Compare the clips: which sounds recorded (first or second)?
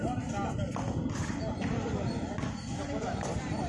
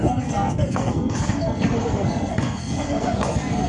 first